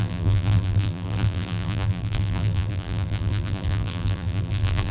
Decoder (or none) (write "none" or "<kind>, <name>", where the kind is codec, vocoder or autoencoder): vocoder, BigVGAN v2